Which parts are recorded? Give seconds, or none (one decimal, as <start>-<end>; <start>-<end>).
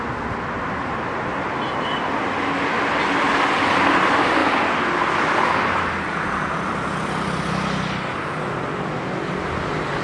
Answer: 0.0-10.0